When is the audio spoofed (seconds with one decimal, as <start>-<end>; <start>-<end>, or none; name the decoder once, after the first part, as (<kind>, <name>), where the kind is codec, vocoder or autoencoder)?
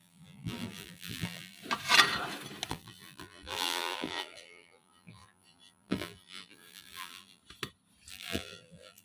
0.0-1.6 (vocoder, BigVGAN v2); 2.7-7.4; 8.1-9.0